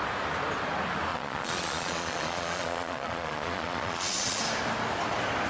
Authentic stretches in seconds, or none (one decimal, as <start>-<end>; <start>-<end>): 0.0-1.1; 4.4-5.5